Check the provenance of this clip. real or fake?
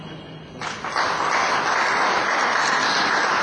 real